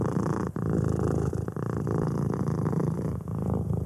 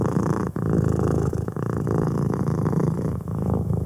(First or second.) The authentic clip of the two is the first